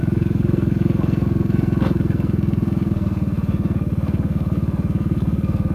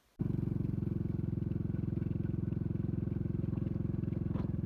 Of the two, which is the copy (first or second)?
first